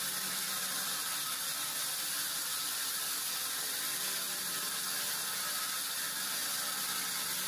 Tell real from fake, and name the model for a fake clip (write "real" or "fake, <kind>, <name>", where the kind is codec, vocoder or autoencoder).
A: real